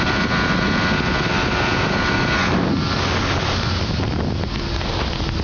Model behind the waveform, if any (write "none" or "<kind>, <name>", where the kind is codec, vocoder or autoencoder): none